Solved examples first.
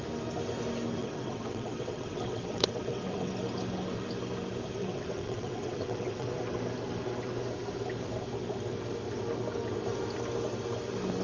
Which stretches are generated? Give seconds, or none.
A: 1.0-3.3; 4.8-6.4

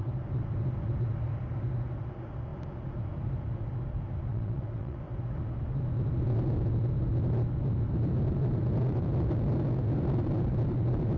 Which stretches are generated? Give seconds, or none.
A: 4.3-5.0

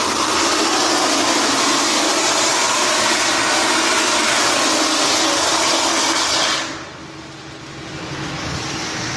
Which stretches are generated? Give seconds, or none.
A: none